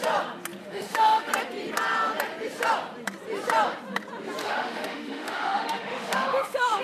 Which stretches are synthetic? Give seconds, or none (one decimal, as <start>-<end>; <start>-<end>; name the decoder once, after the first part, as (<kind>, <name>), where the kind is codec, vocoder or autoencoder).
0.6-1.3 (autoencoder, DAC-VAE); 4.4-6.8